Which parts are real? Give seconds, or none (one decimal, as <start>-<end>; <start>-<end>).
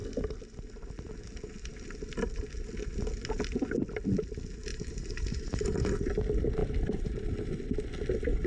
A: 0.0-4.7; 5.9-6.6; 7.2-8.5